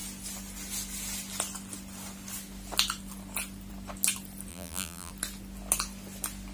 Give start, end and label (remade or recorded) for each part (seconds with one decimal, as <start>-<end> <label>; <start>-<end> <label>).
0.0-4.5 recorded; 4.5-5.1 remade; 5.1-6.5 recorded